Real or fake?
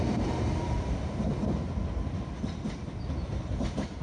real